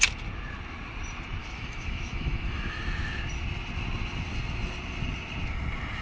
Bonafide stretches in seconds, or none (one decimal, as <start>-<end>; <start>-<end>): 0.0-1.4; 2.8-6.0